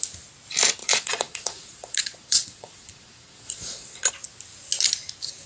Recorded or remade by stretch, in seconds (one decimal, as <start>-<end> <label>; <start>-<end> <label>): 0.0-0.8 recorded; 0.8-4.1 remade; 4.1-5.5 recorded